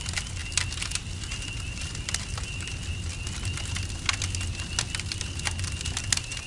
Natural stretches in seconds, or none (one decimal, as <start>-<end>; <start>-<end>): 0.0-6.5